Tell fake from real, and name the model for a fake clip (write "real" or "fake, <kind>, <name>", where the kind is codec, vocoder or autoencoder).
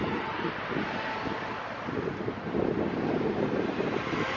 real